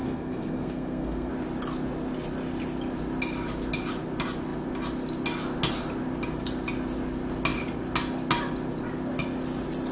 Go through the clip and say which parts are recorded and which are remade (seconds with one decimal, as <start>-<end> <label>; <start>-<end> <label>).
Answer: 0.0-1.3 remade; 1.3-9.9 recorded